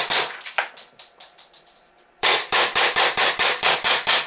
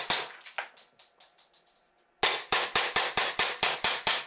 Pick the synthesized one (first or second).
first